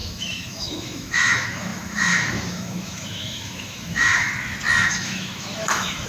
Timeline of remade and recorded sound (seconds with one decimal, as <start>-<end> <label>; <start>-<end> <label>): 0.0-4.3 remade; 4.3-4.9 recorded; 4.9-6.1 remade